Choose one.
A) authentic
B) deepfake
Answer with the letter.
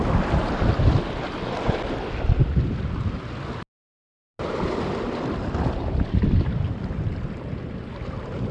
A